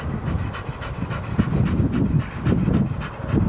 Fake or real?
real